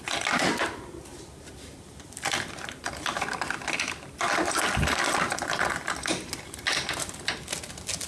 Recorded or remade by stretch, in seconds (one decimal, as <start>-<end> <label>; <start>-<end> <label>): 0.0-1.1 recorded; 1.1-5.3 remade; 5.3-8.1 recorded